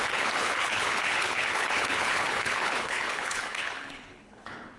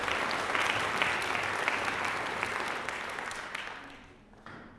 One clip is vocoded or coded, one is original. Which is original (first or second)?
second